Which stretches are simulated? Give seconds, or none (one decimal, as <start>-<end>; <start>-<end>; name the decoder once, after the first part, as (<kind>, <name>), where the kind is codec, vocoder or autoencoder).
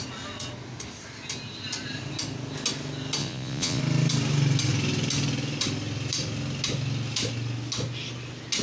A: 3.2-3.8 (vocoder, Vocos)